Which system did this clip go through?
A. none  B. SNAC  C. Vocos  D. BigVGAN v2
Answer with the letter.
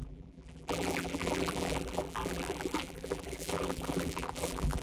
D